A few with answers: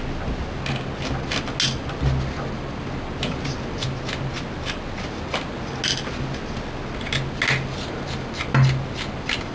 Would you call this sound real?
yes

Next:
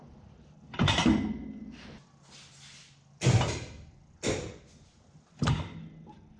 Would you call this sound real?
yes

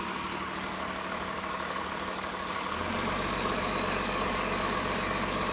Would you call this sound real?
no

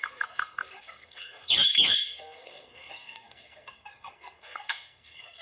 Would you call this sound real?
no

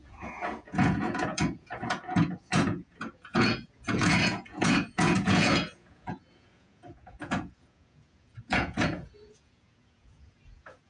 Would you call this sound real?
no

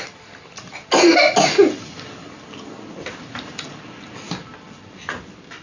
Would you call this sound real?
yes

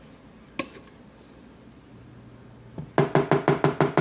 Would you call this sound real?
yes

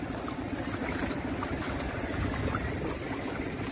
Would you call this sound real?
yes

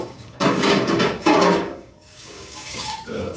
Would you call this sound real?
no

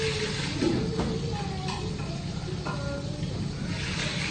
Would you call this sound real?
yes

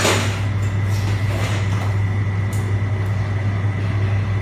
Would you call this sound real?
yes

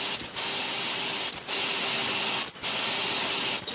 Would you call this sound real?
yes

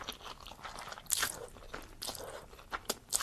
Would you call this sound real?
yes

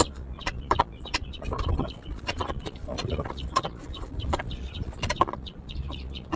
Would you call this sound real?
no